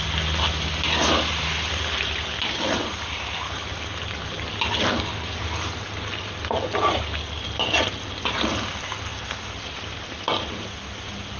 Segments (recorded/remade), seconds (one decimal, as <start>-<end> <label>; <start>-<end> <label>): 0.0-11.4 recorded